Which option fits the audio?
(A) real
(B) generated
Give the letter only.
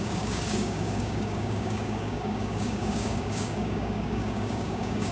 B